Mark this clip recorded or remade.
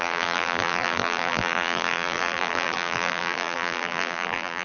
remade